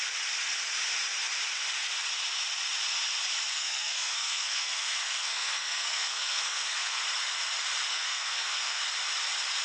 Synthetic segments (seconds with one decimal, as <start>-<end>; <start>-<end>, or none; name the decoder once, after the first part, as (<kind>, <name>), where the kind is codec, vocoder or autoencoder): 3.5-7.0 (codec, SNAC); 7.9-8.8